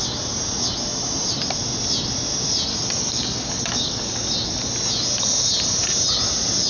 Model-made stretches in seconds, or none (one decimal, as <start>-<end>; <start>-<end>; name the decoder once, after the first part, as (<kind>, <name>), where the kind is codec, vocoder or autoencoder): 2.7-4.3 (codec, DAC)